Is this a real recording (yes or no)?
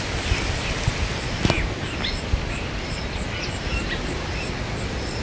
yes